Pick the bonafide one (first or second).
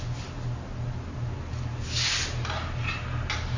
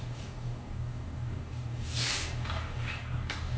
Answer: first